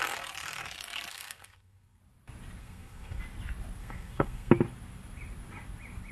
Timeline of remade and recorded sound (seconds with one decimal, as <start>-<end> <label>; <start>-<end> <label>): 0.0-1.1 recorded; 1.1-2.0 remade; 2.0-2.6 recorded; 2.6-3.2 remade; 3.2-3.8 recorded; 3.8-4.5 remade; 4.5-6.1 recorded